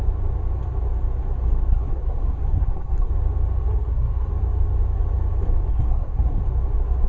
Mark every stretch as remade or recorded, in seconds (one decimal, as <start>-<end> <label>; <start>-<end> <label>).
0.0-1.7 recorded; 1.7-3.1 remade; 3.1-3.6 recorded; 3.6-4.3 remade; 4.3-5.7 recorded; 5.7-6.4 remade; 6.4-7.1 recorded